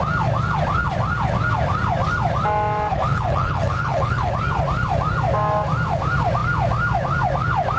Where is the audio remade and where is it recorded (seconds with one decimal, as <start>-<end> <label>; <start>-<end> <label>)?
0.0-2.9 recorded; 2.9-4.3 remade; 4.3-7.8 recorded